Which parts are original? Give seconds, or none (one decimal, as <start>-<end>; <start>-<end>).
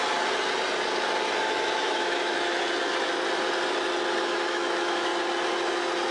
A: 0.0-1.4; 2.6-4.2; 5.1-6.1